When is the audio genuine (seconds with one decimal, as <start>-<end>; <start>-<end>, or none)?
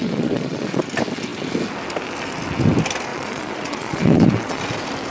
0.8-3.1; 4.6-5.1